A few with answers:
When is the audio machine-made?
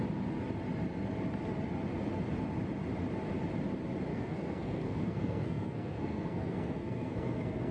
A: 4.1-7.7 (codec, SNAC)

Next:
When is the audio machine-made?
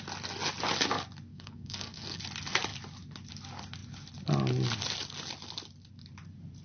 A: 1.3-2.2 (codec, SNAC)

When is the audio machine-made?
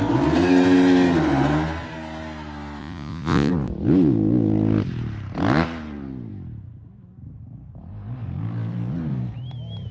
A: 2.8-3.5 (vocoder, Vocos)